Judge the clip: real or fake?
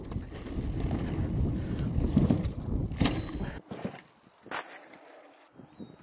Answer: real